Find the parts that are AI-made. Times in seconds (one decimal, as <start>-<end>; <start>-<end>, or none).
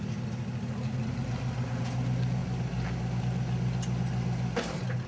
none